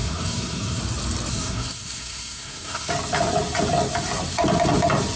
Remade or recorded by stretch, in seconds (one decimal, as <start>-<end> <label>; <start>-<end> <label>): 0.0-0.8 remade; 0.8-1.3 recorded; 1.3-2.9 remade; 2.9-5.2 recorded